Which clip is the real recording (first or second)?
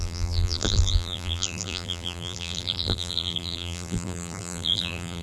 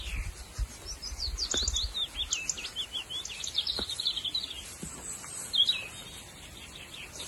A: second